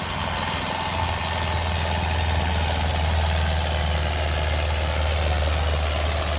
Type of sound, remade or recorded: recorded